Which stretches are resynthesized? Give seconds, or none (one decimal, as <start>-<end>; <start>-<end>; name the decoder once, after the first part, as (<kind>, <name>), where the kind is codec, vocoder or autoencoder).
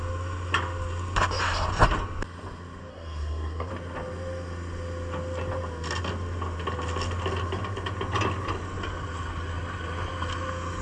2.9-3.7 (codec, SNAC)